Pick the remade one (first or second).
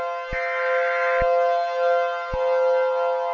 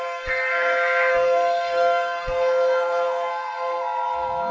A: second